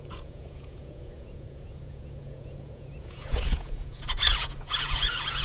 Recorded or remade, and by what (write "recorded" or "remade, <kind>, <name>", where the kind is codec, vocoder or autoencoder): remade, vocoder, Vocos